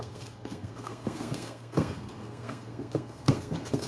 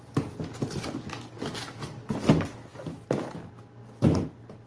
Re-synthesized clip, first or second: first